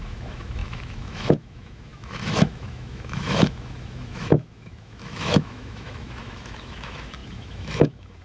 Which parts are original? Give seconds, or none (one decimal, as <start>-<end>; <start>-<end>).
none